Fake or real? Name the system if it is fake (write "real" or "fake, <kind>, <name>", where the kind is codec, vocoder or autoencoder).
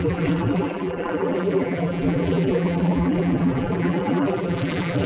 fake, vocoder, BigVGAN v2